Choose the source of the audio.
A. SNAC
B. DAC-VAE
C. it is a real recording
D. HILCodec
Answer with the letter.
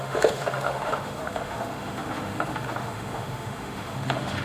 B